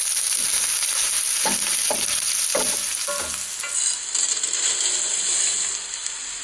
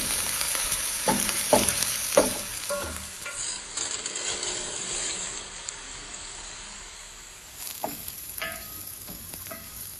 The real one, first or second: first